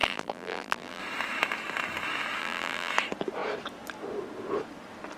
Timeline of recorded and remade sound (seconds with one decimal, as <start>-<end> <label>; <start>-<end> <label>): 0.0-1.0 remade; 1.0-2.4 recorded; 2.4-2.9 remade; 2.9-5.2 recorded

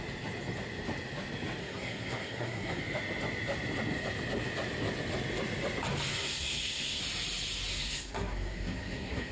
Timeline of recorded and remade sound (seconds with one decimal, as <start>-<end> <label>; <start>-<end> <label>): 0.0-1.6 recorded; 1.6-2.8 remade; 2.8-6.1 recorded; 6.1-7.0 remade; 7.0-7.7 recorded; 7.7-9.3 remade

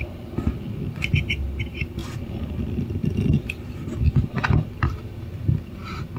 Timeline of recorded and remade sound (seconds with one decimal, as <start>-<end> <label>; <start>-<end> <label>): 0.0-2.0 remade; 2.0-2.5 recorded; 2.5-3.0 remade; 3.0-4.9 recorded; 4.9-6.2 remade

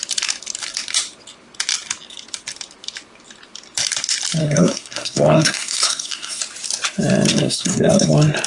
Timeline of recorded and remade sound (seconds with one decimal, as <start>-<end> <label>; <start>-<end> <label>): 0.0-4.4 recorded; 4.4-6.4 remade; 6.4-7.3 recorded; 7.3-8.1 remade; 8.1-8.5 recorded

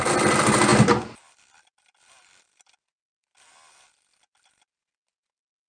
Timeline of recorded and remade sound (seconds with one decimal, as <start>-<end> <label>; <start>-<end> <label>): 0.0-5.7 recorded

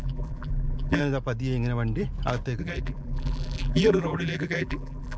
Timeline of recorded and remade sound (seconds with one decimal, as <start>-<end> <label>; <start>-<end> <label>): 0.0-1.0 remade; 1.0-2.6 recorded; 2.6-5.2 remade

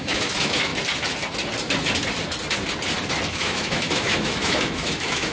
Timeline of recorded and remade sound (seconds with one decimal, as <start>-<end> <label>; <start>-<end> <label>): 0.0-0.7 remade; 0.7-3.3 recorded; 3.3-5.3 remade